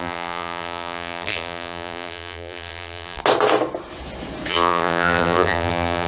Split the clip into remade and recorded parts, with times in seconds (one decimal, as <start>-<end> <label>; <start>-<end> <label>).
0.0-3.2 remade; 3.2-4.5 recorded; 4.5-6.1 remade